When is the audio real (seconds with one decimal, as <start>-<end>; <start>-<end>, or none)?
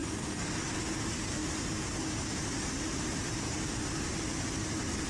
0.7-5.1